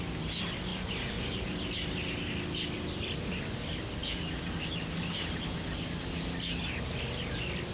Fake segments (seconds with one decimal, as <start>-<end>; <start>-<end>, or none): none